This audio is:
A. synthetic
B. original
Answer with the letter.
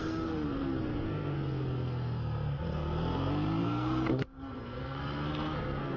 A